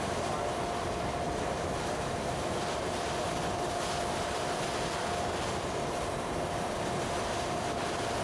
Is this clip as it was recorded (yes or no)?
no